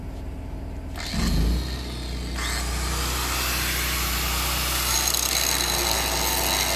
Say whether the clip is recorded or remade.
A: recorded